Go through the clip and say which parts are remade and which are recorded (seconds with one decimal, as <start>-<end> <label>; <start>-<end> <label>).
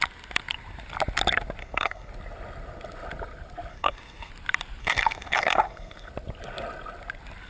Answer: 0.0-1.6 recorded; 1.6-2.1 remade; 2.1-3.7 recorded; 3.7-4.3 remade; 4.3-4.8 recorded; 4.8-6.1 remade; 6.1-7.5 recorded